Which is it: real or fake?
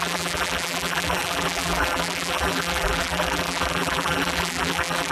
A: fake